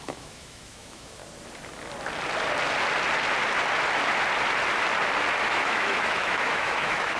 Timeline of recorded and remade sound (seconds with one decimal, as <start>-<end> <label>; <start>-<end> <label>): 0.0-1.2 remade; 1.2-5.5 recorded; 5.5-7.2 remade